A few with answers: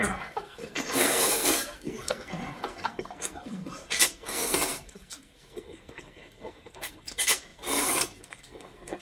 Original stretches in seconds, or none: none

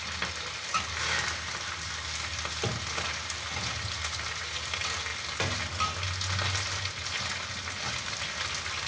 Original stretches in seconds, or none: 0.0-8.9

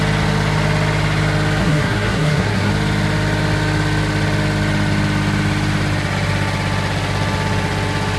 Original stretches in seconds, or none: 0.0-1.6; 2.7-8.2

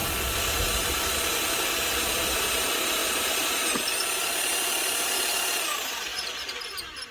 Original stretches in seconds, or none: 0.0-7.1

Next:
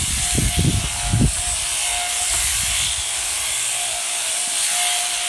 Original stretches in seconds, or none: 0.0-5.3